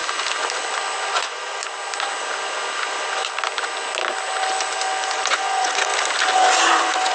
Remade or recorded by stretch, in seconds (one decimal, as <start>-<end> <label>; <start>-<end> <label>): 0.0-1.1 recorded; 1.1-1.6 remade; 1.6-5.3 recorded; 5.3-5.9 remade; 5.9-6.6 recorded; 6.6-7.1 remade